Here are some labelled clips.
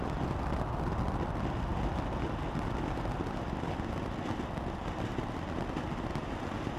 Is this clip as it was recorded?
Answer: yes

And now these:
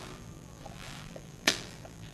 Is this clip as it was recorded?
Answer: no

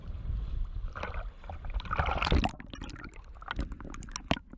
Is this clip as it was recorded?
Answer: yes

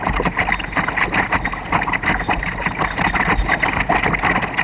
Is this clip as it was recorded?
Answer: yes